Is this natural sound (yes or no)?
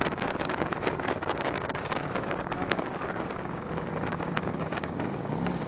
no